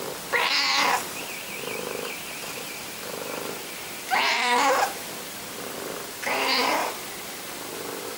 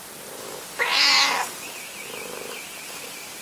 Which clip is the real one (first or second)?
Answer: second